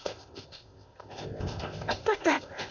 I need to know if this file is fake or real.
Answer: fake